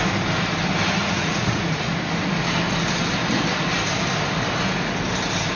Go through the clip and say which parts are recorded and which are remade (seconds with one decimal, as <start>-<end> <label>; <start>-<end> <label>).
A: 0.0-1.0 recorded; 1.0-1.9 remade; 1.9-5.6 recorded